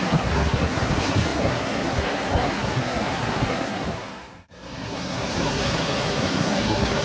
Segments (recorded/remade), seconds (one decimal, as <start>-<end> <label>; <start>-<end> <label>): 0.0-7.0 remade